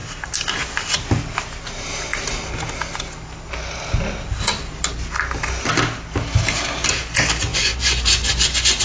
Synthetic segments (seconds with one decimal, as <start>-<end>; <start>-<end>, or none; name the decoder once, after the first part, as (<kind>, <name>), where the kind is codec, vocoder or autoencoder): 7.5-8.8 (vocoder, Vocos)